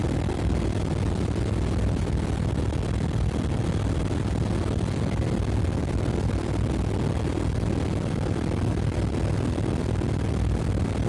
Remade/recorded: recorded